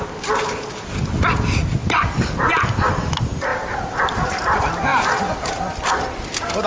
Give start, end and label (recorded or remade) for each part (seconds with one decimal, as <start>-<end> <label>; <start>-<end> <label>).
0.0-6.7 recorded